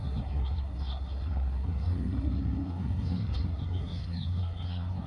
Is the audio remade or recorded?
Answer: remade